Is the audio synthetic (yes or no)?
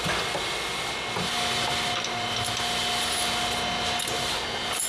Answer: no